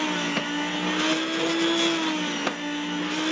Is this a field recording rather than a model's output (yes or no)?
yes